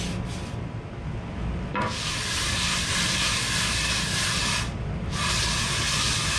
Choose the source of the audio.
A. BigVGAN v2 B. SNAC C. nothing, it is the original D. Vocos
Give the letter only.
C